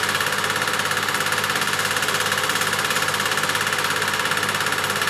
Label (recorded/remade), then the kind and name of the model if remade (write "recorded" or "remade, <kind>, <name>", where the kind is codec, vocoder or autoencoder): recorded